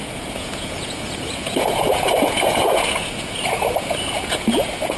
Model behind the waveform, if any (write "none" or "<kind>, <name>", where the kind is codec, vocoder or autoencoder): vocoder, Vocos